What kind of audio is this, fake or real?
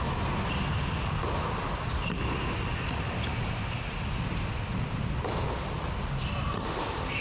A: real